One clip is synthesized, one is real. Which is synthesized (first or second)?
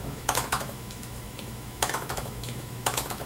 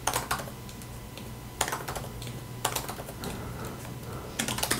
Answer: first